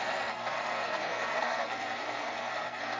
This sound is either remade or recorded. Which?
remade